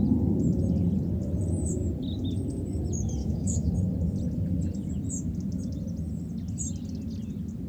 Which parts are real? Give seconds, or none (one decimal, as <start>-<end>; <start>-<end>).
0.0-3.2; 3.7-7.7